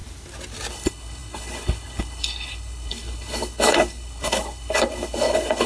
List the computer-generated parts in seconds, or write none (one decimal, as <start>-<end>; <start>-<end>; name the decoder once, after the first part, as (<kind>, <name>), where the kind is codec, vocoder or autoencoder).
0.7-5.7 (codec, HILCodec)